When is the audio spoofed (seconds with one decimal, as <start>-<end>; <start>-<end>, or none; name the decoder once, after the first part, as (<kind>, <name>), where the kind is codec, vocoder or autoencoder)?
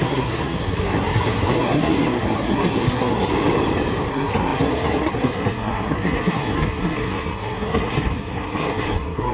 0.0-3.3 (codec, SNAC); 4.1-9.3